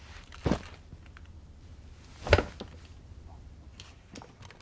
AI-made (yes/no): no